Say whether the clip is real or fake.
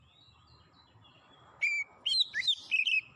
real